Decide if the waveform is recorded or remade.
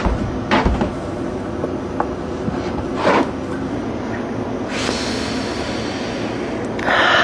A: recorded